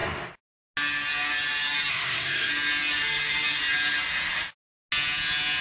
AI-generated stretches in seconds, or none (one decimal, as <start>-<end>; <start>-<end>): 1.9-2.5